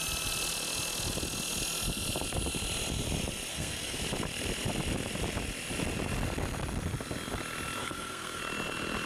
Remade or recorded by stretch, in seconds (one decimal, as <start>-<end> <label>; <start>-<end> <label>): 0.0-3.5 recorded; 3.5-4.0 remade; 4.0-7.8 recorded; 7.8-8.4 remade; 8.4-9.1 recorded